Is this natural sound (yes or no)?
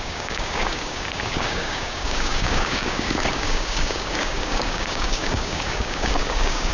no